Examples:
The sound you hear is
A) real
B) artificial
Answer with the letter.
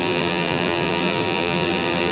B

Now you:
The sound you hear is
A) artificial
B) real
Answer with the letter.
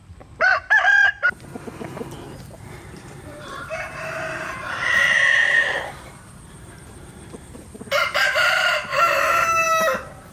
A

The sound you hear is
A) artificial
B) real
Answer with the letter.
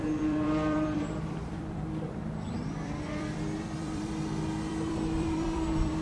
A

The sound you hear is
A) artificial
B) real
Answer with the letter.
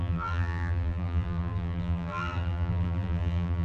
A